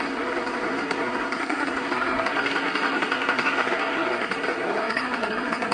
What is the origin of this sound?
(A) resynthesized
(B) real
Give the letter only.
A